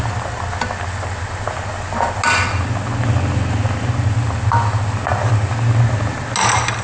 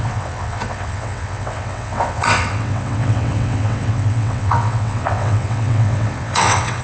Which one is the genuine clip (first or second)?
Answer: first